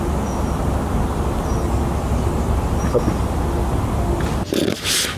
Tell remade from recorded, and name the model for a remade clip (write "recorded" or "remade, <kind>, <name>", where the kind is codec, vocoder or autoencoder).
recorded